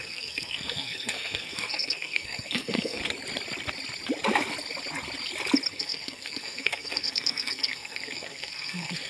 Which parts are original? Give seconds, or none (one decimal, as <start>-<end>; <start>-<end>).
3.0-5.7